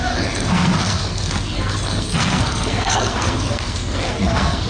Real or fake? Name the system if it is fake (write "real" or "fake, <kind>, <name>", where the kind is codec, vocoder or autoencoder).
fake, codec, SNAC